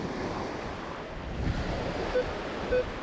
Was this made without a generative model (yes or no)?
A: yes